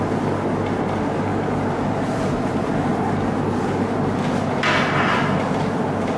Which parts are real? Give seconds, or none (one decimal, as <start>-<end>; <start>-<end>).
0.0-1.3; 2.5-6.2